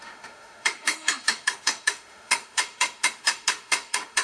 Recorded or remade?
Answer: remade